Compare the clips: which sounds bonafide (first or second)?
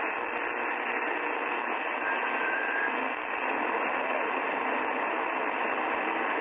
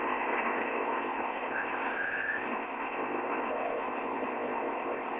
first